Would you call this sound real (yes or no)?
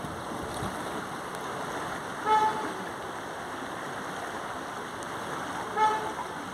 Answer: yes